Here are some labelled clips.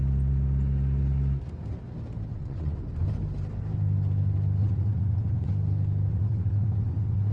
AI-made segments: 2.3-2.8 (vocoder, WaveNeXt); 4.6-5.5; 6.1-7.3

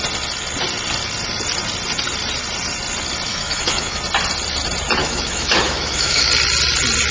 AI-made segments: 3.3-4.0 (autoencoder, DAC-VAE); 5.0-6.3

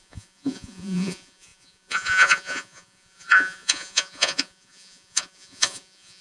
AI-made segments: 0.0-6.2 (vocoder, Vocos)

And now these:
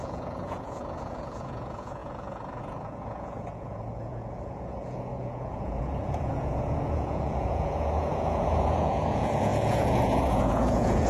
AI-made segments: 0.0-11.1 (vocoder, Vocos)

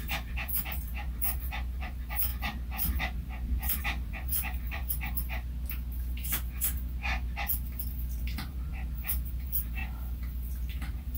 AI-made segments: 0.0-2.3 (vocoder, BigVGAN v2); 3.8-4.8; 8.2-9.8; 10.7-11.2

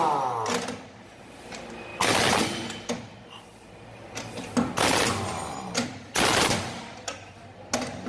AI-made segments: none